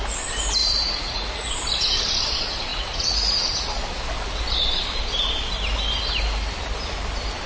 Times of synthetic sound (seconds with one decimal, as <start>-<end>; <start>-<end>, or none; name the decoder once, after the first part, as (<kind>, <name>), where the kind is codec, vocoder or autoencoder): 0.6-1.5 (vocoder, Vocos); 2.7-3.8